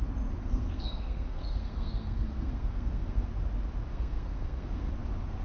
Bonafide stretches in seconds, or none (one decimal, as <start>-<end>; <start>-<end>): 0.0-0.4; 3.3-3.9; 4.9-5.4